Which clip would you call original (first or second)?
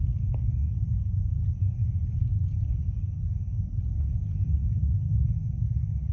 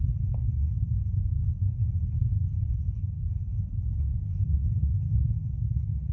first